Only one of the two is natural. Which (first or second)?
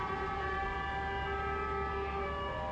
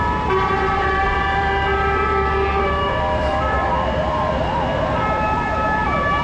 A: first